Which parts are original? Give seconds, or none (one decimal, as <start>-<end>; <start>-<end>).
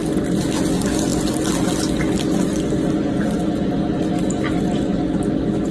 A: 0.0-5.7